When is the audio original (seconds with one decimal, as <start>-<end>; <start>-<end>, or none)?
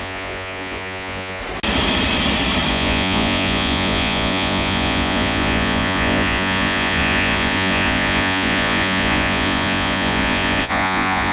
1.4-2.7